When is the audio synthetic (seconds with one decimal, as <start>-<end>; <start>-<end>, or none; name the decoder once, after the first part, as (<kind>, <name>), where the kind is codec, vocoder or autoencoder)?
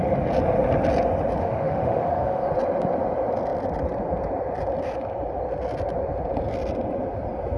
1.4-2.5 (autoencoder, DAC-VAE)